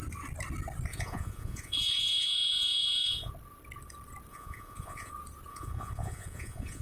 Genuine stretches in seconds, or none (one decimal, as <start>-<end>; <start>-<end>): 0.0-0.9; 3.3-4.3; 5.1-5.5